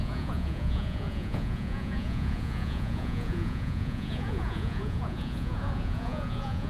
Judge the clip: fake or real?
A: fake